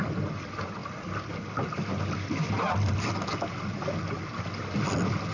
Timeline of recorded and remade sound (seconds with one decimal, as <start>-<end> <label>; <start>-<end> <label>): 0.0-5.3 recorded